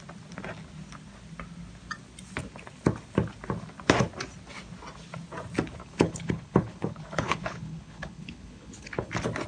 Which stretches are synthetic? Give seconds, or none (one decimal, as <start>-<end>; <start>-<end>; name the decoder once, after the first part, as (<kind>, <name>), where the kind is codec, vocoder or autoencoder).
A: 5.8-9.1 (codec, HILCodec)